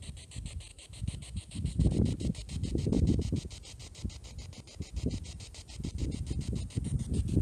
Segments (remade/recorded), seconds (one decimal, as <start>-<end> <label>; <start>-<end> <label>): 0.0-0.7 recorded; 0.7-1.9 remade; 1.9-7.4 recorded